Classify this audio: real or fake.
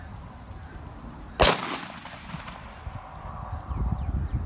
real